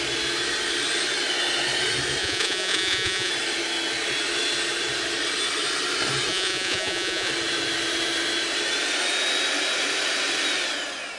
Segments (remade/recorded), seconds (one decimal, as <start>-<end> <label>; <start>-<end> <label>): 0.0-2.2 recorded; 2.2-3.3 remade; 3.3-6.3 recorded; 6.3-7.3 remade; 7.3-11.2 recorded